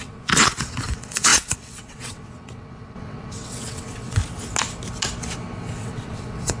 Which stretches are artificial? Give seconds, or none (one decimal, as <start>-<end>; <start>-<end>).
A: 0.0-4.2; 5.8-6.6